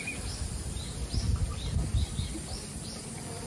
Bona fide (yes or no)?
yes